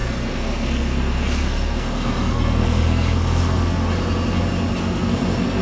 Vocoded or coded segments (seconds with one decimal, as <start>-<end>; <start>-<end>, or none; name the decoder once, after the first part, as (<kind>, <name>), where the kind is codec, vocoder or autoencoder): 0.0-3.8 (codec, SNAC); 4.8-5.6